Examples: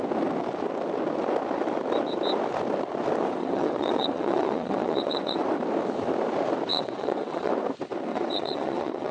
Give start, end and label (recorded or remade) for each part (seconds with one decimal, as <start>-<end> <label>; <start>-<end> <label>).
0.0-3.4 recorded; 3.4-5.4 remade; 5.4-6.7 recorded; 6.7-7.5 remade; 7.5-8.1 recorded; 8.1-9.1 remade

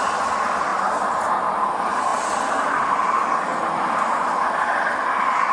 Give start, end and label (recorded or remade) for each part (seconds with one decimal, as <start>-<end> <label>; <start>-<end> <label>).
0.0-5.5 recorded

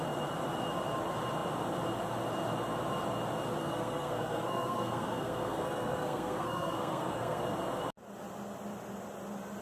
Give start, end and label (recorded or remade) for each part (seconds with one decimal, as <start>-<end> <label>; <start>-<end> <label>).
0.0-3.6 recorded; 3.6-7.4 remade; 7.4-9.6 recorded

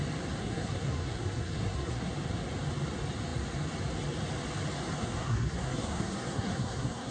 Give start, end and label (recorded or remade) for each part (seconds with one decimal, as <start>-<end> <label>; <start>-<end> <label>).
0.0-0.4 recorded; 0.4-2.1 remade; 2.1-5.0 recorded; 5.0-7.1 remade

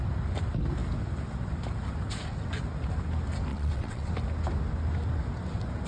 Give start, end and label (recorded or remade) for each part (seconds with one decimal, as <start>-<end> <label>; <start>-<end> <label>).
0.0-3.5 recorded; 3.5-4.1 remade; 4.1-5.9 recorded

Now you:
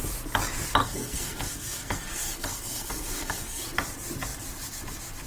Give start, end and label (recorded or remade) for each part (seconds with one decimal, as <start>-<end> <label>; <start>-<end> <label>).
0.0-0.8 recorded; 0.8-3.6 remade; 3.6-5.3 recorded